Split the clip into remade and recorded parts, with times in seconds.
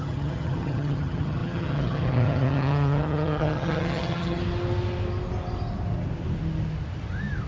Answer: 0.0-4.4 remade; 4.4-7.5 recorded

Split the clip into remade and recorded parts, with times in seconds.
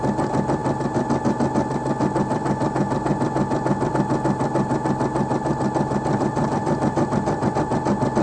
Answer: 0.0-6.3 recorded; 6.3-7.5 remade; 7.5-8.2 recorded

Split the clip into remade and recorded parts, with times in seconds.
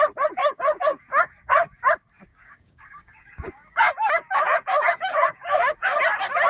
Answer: 0.0-0.4 recorded; 0.4-1.8 remade; 1.8-2.3 recorded; 2.3-6.0 remade; 6.0-6.5 recorded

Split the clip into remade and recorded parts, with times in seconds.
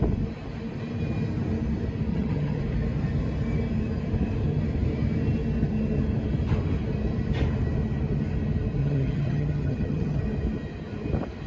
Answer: 0.0-2.1 recorded; 2.1-2.6 remade; 2.6-8.8 recorded; 8.8-10.2 remade; 10.2-11.5 recorded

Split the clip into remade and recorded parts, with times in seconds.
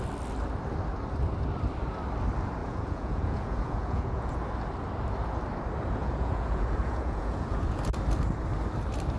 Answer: 0.0-2.6 recorded; 2.6-4.3 remade; 4.3-6.0 recorded; 6.0-7.8 remade; 7.8-9.2 recorded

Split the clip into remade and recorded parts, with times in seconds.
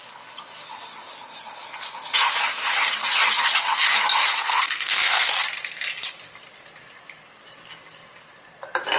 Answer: 0.0-4.3 recorded; 4.3-5.3 remade; 5.3-9.0 recorded